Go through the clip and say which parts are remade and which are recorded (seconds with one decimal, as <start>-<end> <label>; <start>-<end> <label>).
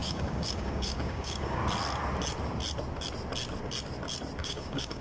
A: 0.0-1.6 remade; 1.6-4.4 recorded; 4.4-5.0 remade